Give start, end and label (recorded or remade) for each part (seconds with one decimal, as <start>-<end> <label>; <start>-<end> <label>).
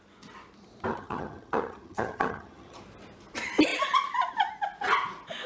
0.0-0.9 recorded; 0.9-2.8 remade; 2.8-5.5 recorded